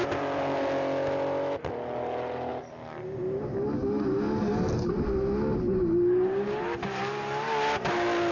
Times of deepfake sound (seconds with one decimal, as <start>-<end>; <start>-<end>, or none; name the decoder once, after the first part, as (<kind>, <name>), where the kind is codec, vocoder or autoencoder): none